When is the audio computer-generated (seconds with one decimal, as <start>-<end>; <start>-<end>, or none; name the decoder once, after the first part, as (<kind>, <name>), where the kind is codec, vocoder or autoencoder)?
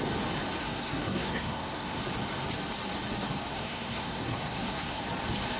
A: 0.6-2.0 (codec, SNAC); 3.5-5.0